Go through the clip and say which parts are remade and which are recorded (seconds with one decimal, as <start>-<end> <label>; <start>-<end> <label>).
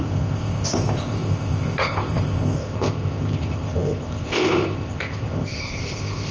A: 0.0-6.3 remade